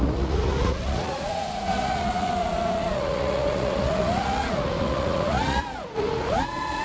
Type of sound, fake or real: fake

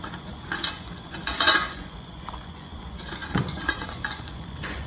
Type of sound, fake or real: fake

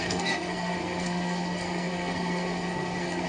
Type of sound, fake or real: fake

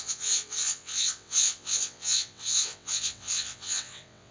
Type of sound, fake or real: fake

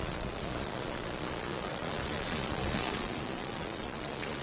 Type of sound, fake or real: fake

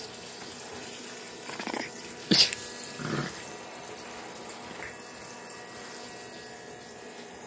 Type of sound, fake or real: real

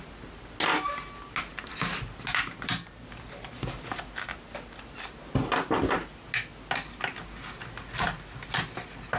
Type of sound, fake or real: real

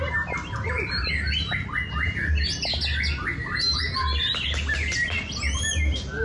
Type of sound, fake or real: real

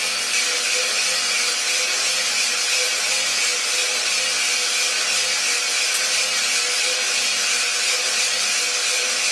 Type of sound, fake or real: real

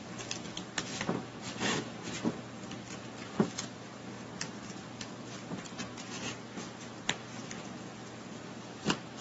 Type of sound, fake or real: real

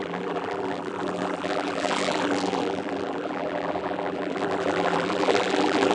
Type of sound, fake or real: fake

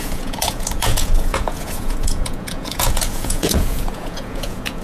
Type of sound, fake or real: fake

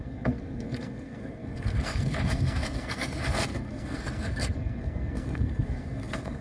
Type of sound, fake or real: fake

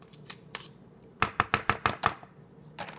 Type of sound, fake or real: real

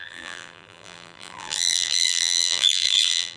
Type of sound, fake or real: fake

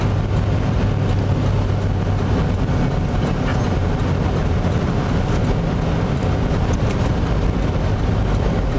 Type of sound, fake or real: real